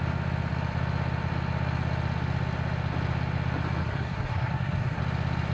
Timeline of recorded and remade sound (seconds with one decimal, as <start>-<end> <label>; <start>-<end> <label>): 0.0-3.8 recorded; 3.8-5.0 remade; 5.0-5.5 recorded